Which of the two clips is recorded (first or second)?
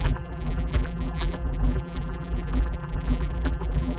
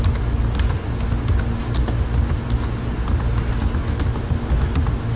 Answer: second